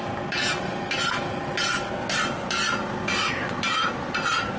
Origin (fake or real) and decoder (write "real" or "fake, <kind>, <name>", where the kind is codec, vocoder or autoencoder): real